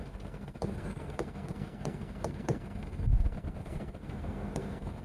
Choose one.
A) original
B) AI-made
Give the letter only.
B